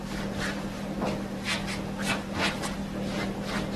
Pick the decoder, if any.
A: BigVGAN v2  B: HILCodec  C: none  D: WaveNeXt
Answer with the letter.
C